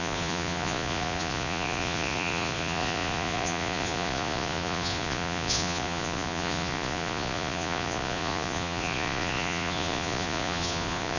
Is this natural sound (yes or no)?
no